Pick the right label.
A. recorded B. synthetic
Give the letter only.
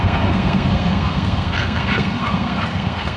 B